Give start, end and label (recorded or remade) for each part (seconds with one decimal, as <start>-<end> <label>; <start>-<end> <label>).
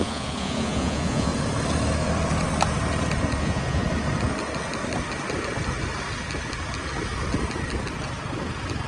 0.0-1.3 remade; 1.3-3.4 recorded; 3.4-3.8 remade; 3.8-8.9 recorded